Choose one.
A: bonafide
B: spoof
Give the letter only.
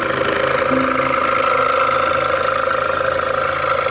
A